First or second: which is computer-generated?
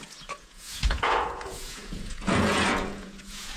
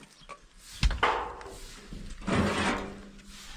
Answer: first